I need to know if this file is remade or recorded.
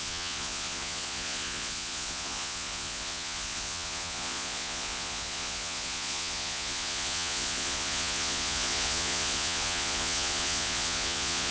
remade